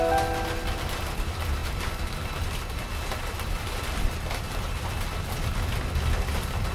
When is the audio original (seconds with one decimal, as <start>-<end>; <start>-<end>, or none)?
0.0-1.6; 2.6-6.7